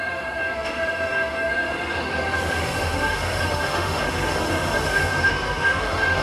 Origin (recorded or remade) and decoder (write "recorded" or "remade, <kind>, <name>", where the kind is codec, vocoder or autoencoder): remade, autoencoder, DAC-VAE